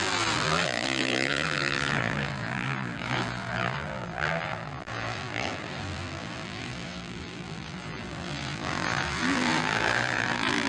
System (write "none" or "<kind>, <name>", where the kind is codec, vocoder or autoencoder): vocoder, BigVGAN v2